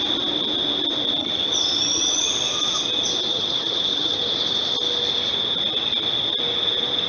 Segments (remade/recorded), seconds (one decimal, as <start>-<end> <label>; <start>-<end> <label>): 0.0-1.2 recorded; 1.2-2.3 remade; 2.3-3.3 recorded; 3.3-4.2 remade; 4.2-7.1 recorded